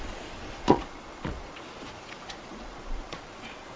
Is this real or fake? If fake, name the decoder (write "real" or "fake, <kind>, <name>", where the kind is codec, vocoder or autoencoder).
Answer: fake, vocoder, Vocos